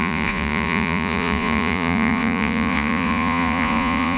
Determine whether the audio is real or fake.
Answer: fake